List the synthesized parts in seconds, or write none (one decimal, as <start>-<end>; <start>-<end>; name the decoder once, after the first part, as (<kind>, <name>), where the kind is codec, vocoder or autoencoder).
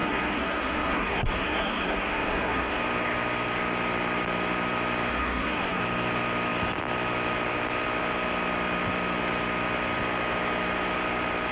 0.0-2.8 (codec, SNAC); 5.1-5.8